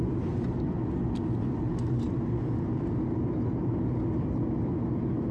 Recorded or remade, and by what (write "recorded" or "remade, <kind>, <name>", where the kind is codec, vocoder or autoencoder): recorded